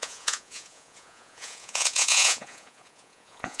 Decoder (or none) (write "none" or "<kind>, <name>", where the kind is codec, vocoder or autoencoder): vocoder, Vocos